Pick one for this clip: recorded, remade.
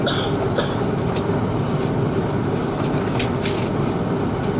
recorded